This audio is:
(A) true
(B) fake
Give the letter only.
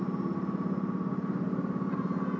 A